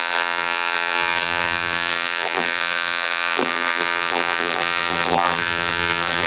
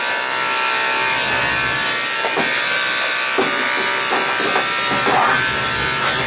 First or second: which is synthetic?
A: first